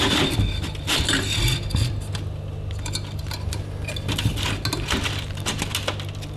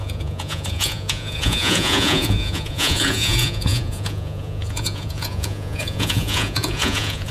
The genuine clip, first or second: first